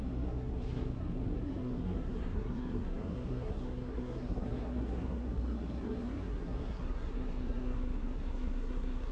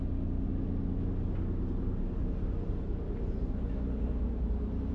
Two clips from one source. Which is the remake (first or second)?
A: first